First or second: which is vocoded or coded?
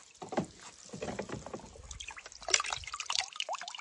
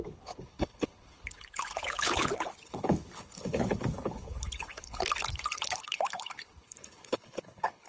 second